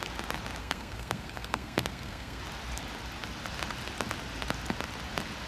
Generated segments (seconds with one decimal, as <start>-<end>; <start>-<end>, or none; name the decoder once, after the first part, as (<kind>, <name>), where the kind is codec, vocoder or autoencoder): 0.6-2.4 (codec, SNAC)